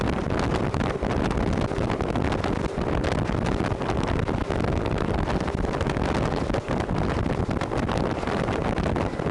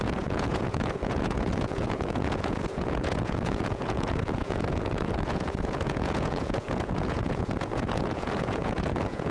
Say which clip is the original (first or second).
first